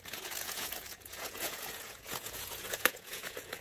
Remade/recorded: remade